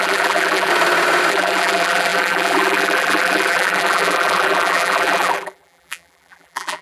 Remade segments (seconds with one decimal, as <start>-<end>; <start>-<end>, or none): 0.0-0.7; 1.3-6.8